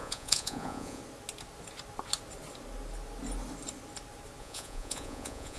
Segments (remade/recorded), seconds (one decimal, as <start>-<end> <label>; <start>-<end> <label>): 0.0-1.0 remade; 1.0-4.4 recorded; 4.4-5.6 remade